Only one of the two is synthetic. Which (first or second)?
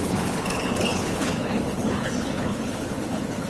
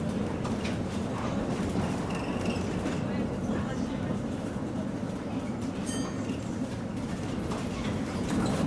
first